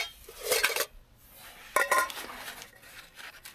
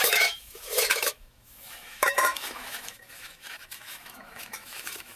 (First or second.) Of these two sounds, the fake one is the second